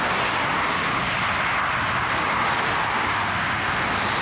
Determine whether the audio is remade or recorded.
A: recorded